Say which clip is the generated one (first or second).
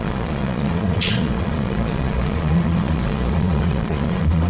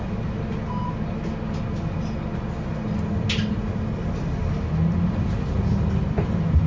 first